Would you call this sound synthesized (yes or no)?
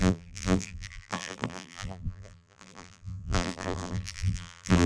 yes